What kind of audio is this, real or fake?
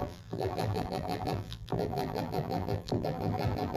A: fake